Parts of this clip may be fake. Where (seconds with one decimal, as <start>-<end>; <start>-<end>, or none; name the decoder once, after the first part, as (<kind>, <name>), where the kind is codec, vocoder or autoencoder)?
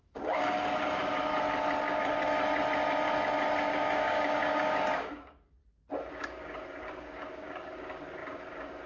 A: 0.0-1.3 (codec, DAC); 3.7-5.6; 6.1-8.9